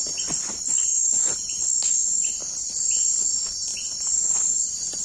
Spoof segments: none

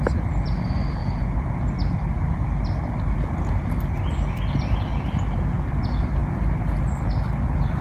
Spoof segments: none